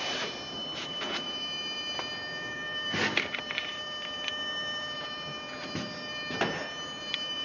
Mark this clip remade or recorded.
remade